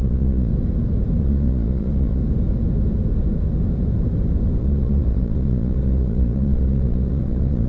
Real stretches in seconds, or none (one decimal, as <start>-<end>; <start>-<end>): 0.5-1.2; 2.2-4.6